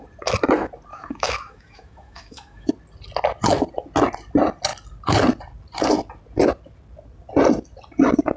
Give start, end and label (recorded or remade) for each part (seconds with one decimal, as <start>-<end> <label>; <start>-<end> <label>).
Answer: 0.0-0.9 recorded; 0.9-2.7 remade; 2.7-8.4 recorded